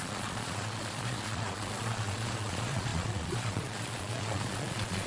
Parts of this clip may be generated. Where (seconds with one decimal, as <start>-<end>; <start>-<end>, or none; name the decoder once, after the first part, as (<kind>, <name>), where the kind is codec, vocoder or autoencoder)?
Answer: 0.0-5.1 (vocoder, Vocos)